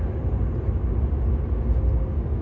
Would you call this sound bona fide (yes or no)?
yes